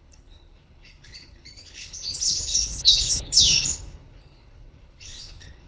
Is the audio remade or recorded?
remade